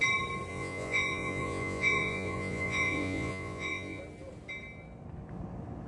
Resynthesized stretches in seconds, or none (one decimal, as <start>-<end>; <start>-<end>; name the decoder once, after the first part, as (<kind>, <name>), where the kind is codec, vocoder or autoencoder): 0.5-4.0 (vocoder, Vocos)

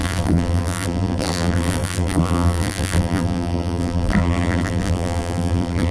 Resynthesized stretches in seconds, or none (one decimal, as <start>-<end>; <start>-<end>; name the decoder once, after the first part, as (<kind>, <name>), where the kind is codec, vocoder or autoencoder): 0.0-5.9 (vocoder, BigVGAN v2)

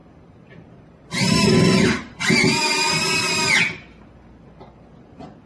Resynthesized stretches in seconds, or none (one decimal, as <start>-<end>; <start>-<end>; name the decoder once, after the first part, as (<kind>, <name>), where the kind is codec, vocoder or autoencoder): none

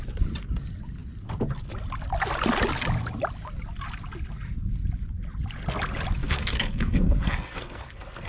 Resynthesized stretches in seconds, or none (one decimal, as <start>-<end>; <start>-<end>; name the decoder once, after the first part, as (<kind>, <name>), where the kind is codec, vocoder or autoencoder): 6.2-8.3 (codec, SNAC)